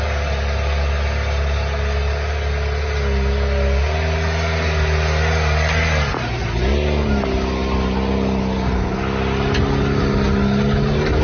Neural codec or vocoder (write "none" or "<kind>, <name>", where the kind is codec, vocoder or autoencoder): none